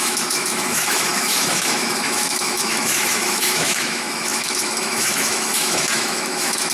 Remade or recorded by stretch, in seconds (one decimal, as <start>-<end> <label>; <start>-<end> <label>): 0.0-6.7 remade